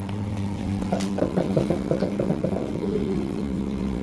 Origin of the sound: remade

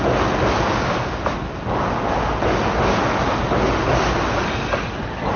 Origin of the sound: recorded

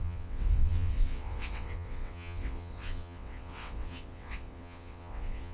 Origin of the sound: remade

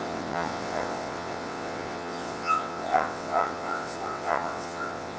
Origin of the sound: remade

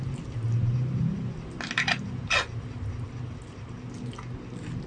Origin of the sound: recorded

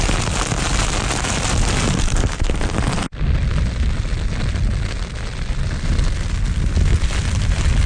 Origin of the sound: recorded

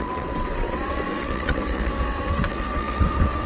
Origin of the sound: remade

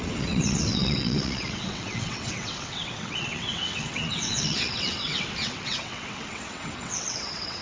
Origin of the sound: remade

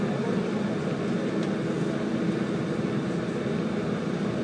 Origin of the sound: recorded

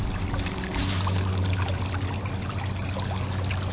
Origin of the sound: recorded